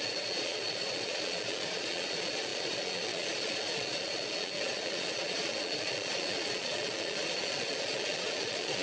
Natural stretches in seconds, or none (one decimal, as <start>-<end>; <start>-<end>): none